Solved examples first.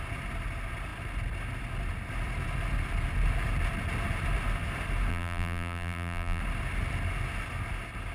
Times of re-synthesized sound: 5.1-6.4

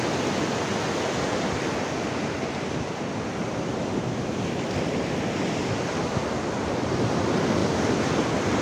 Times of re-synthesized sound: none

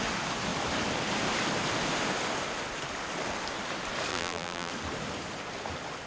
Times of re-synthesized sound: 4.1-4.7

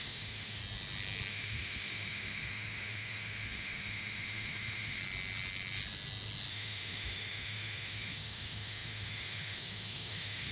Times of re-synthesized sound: 0.0-0.6; 1.3-5.0; 6.5-10.5